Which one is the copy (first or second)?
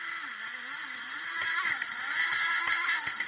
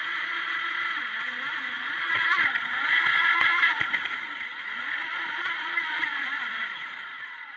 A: second